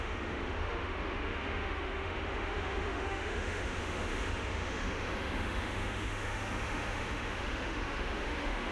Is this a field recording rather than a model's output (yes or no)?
no